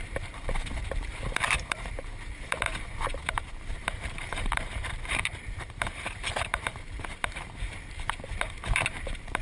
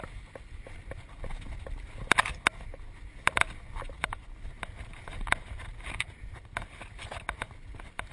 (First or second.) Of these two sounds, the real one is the second